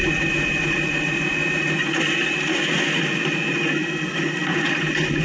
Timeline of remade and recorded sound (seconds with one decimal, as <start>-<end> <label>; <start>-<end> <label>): 0.0-5.2 recorded